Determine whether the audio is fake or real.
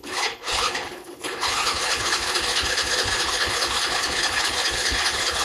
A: fake